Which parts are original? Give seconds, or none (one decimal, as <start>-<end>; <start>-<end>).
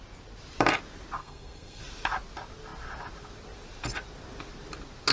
0.0-1.2; 1.8-5.1